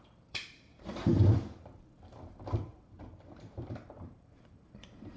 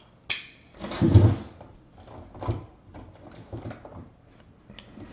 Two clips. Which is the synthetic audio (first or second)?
first